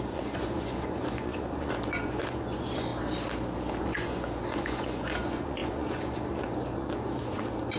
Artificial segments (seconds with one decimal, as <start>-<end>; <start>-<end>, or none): 0.0-2.9; 3.8-7.8

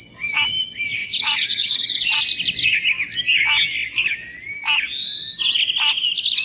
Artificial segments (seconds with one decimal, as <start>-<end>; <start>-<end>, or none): 1.0-2.2

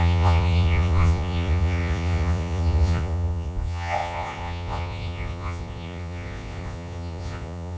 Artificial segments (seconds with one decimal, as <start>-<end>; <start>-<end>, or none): 0.0-7.8

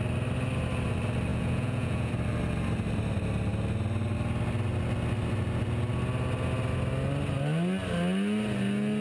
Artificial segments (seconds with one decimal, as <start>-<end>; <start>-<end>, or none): 1.3-2.1

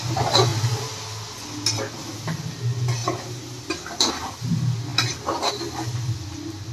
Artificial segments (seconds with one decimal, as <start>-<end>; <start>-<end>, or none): none

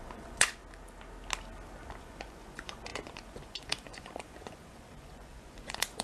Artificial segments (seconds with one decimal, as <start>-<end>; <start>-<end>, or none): 0.0-0.6; 2.0-6.0

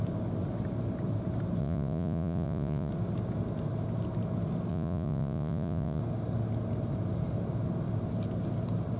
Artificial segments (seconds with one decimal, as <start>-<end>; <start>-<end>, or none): 1.6-2.9; 4.7-6.0